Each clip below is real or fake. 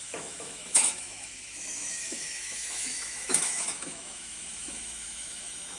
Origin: fake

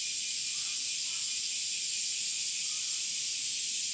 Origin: real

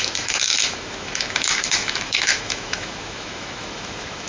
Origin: fake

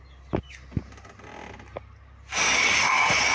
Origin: real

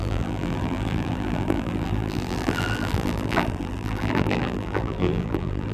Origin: fake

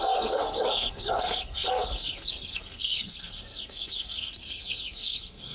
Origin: fake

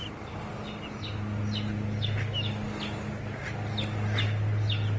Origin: real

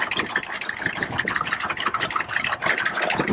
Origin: real